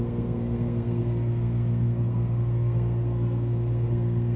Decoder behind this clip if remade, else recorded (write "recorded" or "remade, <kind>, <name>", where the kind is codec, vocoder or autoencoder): remade, codec, SNAC